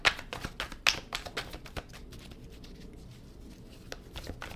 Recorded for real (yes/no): yes